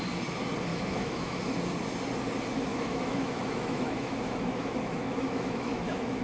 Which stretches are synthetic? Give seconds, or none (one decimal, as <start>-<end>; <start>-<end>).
0.7-1.4; 2.7-6.2